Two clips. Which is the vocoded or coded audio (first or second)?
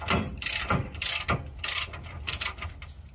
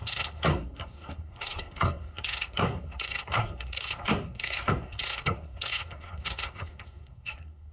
second